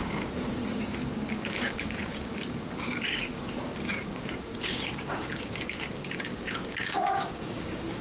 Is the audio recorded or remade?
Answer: remade